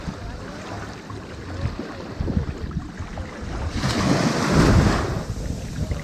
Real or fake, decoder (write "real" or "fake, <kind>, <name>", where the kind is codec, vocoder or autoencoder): real